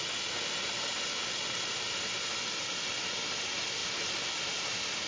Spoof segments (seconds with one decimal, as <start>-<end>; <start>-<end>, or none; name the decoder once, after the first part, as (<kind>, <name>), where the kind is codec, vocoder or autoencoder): 2.3-2.9 (vocoder, BigVGAN v2)